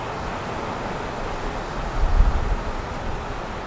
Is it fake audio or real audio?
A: real